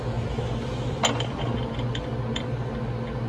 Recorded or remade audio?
recorded